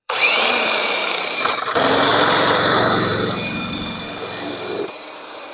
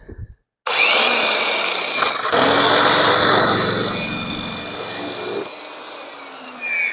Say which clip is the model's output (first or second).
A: first